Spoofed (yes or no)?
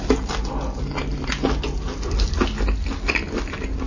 no